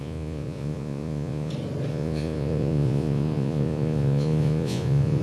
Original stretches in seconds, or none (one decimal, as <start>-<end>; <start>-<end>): 1.5-1.9